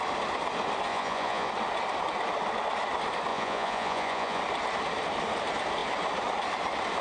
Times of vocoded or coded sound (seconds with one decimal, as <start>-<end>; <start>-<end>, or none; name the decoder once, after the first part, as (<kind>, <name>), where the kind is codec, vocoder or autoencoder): 0.9-1.5 (vocoder, Vocos); 3.3-4.4